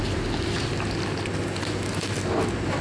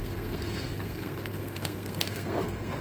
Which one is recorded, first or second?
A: first